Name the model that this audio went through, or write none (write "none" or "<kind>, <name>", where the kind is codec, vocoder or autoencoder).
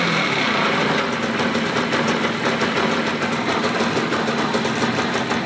none